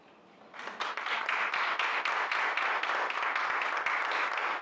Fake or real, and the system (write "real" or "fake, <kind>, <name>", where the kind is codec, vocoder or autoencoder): real